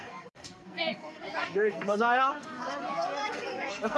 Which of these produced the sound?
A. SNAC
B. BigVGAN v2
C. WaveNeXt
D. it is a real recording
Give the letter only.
A